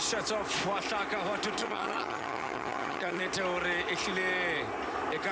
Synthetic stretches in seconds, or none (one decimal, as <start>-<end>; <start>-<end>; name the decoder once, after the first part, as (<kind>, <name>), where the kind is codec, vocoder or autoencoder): 1.6-3.2 (vocoder, HiFi-GAN)